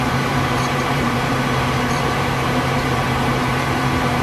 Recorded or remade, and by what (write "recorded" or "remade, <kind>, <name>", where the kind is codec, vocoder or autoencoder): remade, vocoder, BigVGAN v2